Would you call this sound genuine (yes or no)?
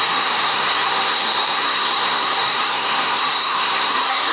no